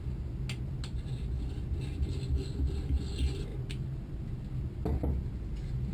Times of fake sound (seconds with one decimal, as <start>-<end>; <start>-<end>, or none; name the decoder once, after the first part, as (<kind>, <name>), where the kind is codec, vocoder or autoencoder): none